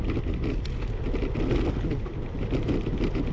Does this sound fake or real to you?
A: real